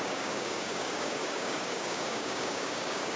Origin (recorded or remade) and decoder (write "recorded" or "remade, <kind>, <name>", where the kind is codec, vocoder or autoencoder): remade, codec, DAC